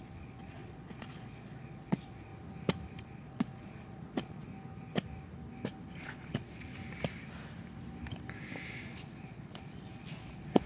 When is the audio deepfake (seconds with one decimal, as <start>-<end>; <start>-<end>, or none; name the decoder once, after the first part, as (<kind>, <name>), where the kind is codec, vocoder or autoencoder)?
0.0-2.3 (vocoder, Vocos); 3.0-4.5; 6.0-6.7; 8.7-10.7